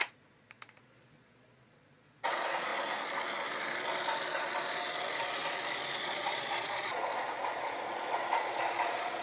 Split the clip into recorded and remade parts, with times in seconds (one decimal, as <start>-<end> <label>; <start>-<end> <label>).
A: 0.0-2.7 remade; 2.7-6.0 recorded; 6.0-7.1 remade; 7.1-7.6 recorded; 7.6-9.2 remade